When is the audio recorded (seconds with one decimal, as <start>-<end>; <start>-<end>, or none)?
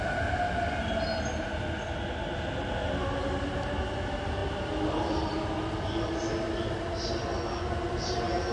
0.0-8.5